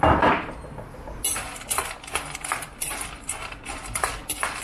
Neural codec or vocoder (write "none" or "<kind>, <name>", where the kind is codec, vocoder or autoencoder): none